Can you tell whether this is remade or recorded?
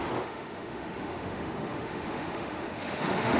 remade